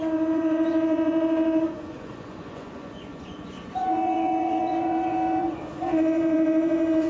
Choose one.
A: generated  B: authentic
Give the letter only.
A